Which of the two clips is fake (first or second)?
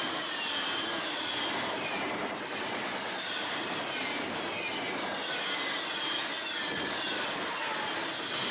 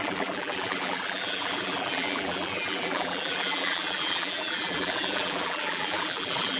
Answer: second